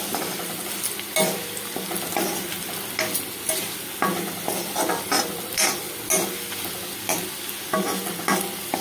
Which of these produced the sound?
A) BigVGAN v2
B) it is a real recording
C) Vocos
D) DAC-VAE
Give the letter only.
B